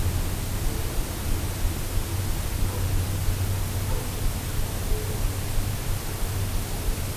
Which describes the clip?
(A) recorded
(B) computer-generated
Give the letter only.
A